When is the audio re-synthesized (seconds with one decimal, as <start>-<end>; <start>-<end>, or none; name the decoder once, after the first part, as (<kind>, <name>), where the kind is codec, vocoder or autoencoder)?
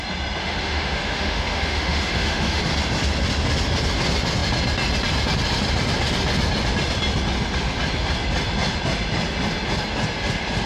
0.4-2.6 (autoencoder, DAC-VAE)